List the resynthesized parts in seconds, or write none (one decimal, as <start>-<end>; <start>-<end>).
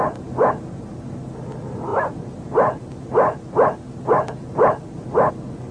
none